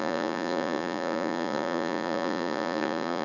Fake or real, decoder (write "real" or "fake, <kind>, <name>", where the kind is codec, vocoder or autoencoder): fake, vocoder, Vocos